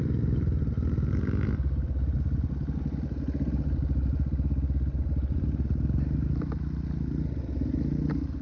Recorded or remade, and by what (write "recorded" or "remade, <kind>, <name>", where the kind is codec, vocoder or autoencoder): recorded